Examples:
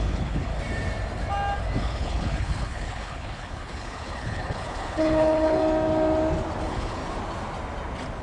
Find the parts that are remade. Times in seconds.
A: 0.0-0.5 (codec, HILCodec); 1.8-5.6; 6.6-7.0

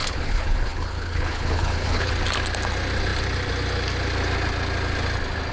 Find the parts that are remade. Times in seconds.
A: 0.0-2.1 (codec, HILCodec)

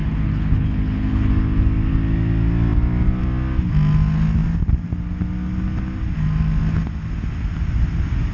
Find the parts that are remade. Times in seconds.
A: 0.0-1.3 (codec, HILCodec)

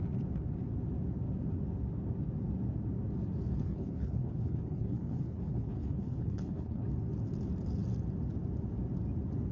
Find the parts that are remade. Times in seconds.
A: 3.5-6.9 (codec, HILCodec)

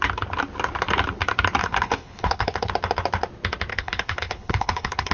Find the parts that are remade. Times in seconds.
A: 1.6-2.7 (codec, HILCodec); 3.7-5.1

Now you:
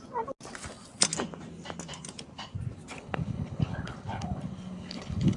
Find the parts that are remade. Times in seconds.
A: 2.9-5.4 (codec, HILCodec)

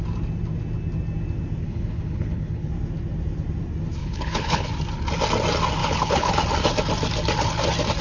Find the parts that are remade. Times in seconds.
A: 1.6-2.7 (codec, HILCodec); 4.0-4.7; 5.8-6.3

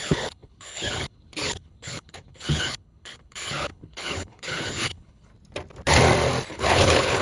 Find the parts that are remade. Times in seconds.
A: 0.0-5.3 (codec, HILCodec); 6.5-7.2